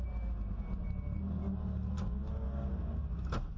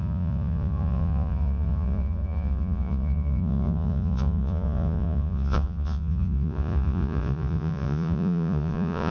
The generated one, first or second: second